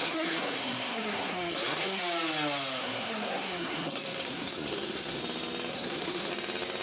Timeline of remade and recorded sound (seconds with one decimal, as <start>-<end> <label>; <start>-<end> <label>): 0.0-2.0 remade; 2.0-2.8 recorded; 2.8-5.2 remade; 5.2-5.7 recorded; 5.7-6.3 remade; 6.3-6.8 recorded